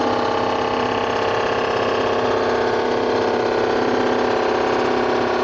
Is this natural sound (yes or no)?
yes